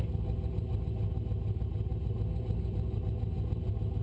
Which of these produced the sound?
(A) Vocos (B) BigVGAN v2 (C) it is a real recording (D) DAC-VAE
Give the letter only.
C